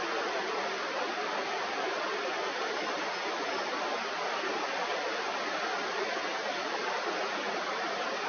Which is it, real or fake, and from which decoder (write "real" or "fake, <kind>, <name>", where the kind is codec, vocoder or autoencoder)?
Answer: real